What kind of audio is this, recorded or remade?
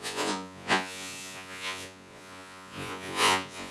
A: remade